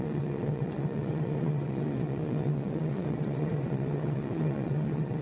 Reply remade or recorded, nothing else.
remade